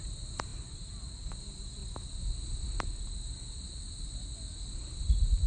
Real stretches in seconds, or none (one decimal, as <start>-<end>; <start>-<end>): 0.0-5.5